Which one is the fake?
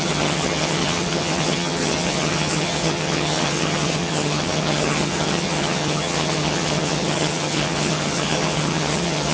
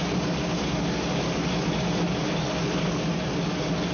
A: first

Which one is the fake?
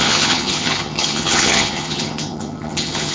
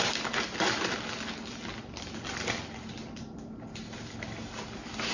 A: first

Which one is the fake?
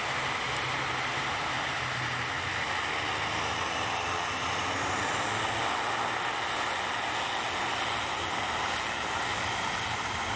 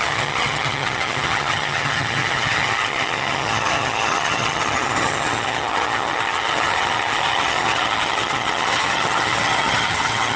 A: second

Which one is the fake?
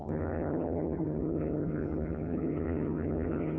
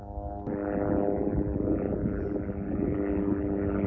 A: first